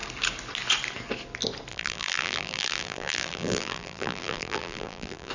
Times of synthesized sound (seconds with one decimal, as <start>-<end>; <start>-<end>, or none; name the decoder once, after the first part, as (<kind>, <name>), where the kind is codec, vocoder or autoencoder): 1.7-5.3 (vocoder, BigVGAN v2)